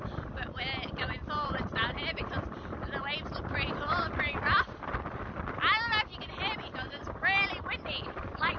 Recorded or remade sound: recorded